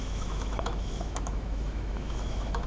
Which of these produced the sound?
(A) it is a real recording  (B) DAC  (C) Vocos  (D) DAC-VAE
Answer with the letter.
D